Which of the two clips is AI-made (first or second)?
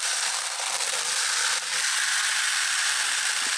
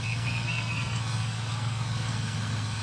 second